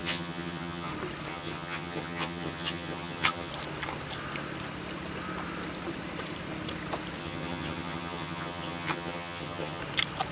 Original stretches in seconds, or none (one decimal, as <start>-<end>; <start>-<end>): 0.9-1.3; 3.5-7.2; 9.8-10.3